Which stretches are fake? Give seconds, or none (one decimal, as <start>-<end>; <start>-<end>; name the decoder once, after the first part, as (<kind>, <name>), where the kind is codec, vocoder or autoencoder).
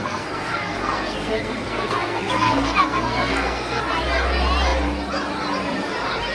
0.0-3.8 (codec, SNAC)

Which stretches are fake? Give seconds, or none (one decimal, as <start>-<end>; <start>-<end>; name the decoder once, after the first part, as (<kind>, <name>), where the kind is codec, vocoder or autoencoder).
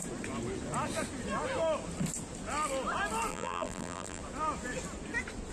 3.3-4.2 (vocoder, BigVGAN v2)